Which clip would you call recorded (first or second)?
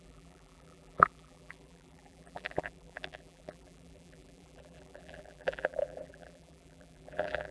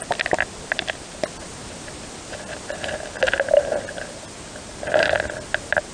second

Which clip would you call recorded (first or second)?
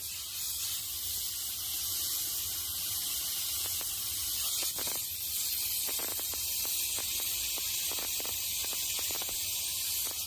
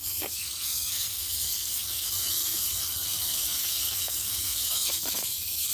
first